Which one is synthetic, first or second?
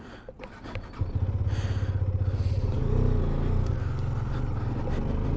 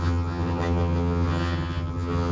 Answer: second